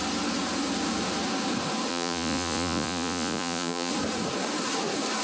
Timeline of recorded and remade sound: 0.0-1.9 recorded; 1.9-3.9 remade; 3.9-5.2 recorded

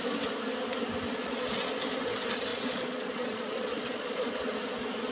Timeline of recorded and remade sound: 0.0-1.2 recorded; 1.2-1.7 remade; 1.7-2.5 recorded; 2.5-4.3 remade; 4.3-5.1 recorded